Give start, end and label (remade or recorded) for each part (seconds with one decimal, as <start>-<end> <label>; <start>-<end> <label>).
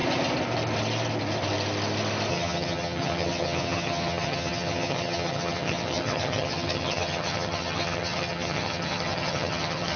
0.0-2.3 recorded; 2.3-10.0 remade